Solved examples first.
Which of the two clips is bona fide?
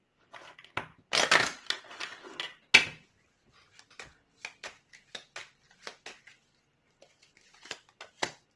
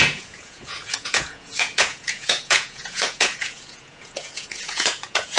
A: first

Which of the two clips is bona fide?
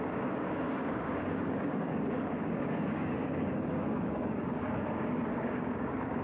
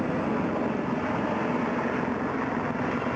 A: second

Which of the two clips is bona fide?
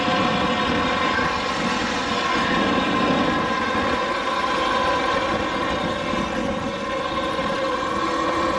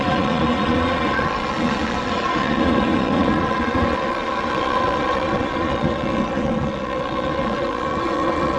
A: first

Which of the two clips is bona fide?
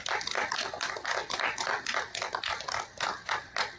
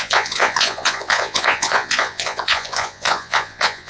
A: first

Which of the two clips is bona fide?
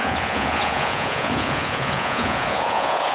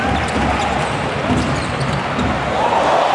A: second